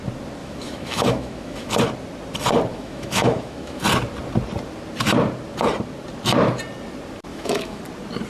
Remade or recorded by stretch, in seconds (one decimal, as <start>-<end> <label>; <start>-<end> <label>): 0.0-0.4 recorded; 0.4-1.7 remade; 1.7-2.7 recorded; 2.7-3.8 remade; 3.8-7.3 recorded; 7.3-7.8 remade; 7.8-8.3 recorded